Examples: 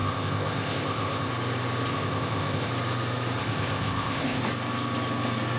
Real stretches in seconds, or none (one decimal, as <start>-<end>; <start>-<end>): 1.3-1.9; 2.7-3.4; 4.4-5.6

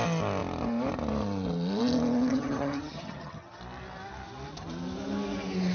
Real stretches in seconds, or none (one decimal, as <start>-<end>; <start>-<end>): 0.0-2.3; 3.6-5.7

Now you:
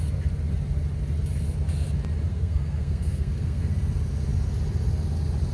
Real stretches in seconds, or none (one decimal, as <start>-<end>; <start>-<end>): 0.0-2.3; 3.7-5.5

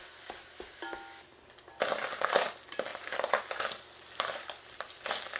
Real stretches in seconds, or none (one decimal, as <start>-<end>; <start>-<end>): 0.0-5.4

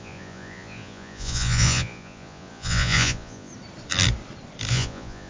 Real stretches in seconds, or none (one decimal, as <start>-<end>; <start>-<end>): 3.5-4.7

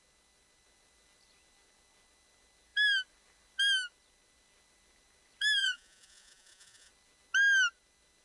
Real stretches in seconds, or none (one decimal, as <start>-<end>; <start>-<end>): 0.0-5.6; 6.9-8.2